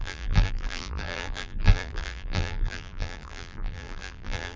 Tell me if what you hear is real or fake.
fake